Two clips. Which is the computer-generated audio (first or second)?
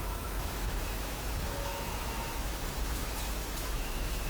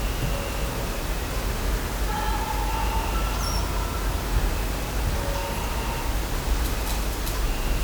first